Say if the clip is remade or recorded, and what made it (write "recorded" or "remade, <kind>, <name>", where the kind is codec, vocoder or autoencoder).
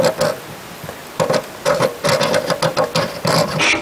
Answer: recorded